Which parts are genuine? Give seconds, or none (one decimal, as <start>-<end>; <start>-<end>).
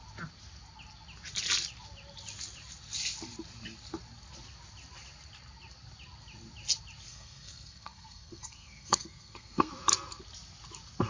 0.0-7.1; 9.7-11.1